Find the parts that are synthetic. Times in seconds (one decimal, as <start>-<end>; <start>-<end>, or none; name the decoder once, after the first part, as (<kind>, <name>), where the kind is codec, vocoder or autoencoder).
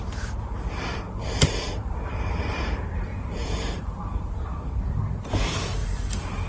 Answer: 1.2-2.7 (vocoder, BigVGAN v2); 3.1-4.3; 5.8-6.5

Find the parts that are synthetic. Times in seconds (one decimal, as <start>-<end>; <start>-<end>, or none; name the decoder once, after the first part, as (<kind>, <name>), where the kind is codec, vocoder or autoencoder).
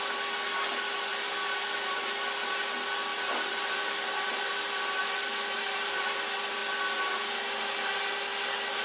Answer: 1.1-2.4 (vocoder, BigVGAN v2)